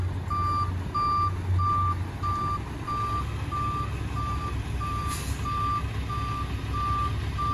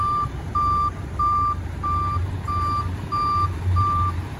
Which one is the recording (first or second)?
first